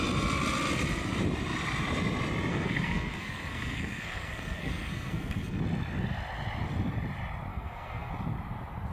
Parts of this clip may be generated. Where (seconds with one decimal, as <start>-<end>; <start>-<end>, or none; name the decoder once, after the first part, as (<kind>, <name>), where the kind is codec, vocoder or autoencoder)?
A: 2.5-5.6 (codec, SNAC); 7.5-8.1